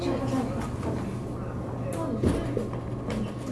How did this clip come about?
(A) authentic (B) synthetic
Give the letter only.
A